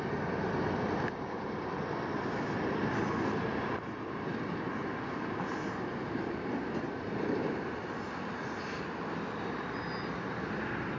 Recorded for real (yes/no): yes